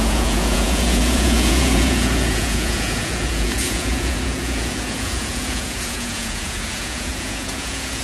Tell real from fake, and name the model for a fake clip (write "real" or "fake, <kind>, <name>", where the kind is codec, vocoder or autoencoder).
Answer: fake, vocoder, Vocos